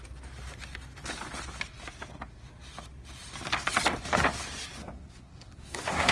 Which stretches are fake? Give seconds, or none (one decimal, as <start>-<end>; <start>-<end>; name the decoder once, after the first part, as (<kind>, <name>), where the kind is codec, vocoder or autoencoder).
4.8-6.1 (codec, SNAC)

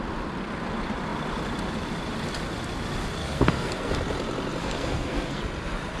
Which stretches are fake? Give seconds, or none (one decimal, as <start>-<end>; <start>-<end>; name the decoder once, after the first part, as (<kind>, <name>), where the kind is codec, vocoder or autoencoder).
3.2-3.9 (codec, SNAC); 4.6-5.4

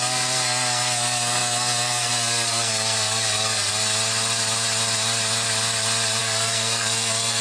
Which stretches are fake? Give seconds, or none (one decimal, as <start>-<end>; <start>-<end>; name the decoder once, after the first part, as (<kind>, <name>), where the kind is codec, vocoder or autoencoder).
0.0-3.7 (codec, SNAC); 6.2-7.4

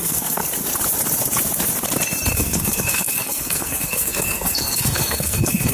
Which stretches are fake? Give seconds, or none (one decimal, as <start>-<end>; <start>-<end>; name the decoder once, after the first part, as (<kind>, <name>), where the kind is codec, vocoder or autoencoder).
0.0-0.4 (codec, SNAC); 2.3-5.7

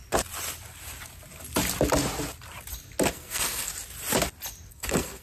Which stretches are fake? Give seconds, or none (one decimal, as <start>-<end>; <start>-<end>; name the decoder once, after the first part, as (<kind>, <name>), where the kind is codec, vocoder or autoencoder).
3.1-3.7 (codec, SNAC); 4.7-5.2

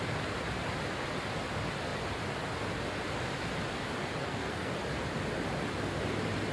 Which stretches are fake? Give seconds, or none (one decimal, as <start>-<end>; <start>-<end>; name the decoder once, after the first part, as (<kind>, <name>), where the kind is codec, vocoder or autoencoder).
4.2-4.7 (codec, SNAC)